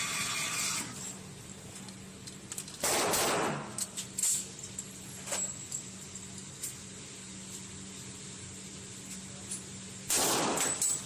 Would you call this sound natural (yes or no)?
yes